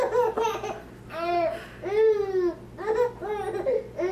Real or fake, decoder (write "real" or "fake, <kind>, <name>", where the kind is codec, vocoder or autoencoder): real